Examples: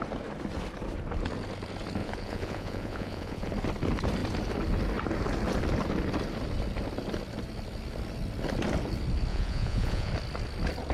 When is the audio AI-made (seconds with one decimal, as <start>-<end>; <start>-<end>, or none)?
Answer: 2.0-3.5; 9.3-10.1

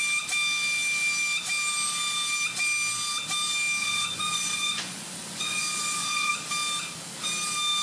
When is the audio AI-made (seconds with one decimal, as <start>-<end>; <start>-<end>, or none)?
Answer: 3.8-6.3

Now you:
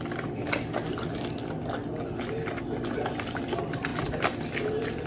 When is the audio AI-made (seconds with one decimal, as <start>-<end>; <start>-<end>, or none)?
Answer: none